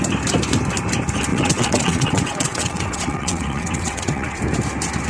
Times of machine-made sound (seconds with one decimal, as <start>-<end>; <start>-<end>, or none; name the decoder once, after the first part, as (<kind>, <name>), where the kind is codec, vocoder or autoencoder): 1.3-4.4 (vocoder, WaveNeXt)